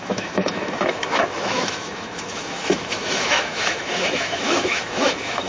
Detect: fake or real fake